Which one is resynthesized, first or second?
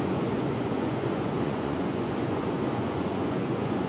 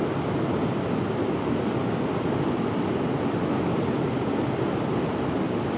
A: first